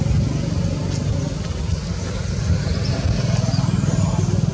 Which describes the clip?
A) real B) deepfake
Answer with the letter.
A